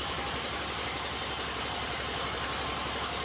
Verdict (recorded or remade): recorded